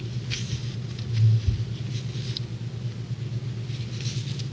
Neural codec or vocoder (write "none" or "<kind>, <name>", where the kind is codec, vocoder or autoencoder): none